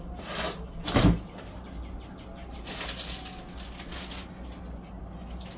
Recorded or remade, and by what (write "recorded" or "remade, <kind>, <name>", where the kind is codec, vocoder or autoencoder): recorded